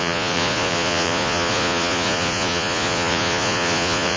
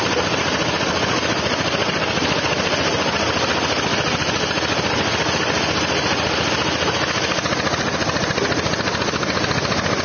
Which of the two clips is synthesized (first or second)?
first